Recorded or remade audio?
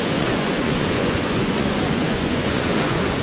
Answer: remade